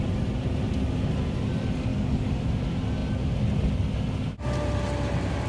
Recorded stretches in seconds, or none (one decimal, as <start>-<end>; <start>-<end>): 0.0-1.9; 2.5-5.5